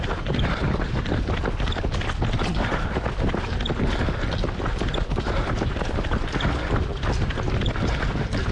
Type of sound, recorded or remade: recorded